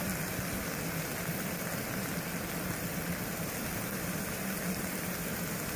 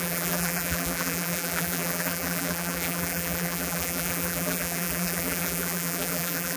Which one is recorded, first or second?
first